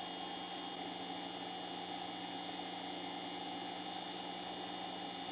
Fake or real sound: real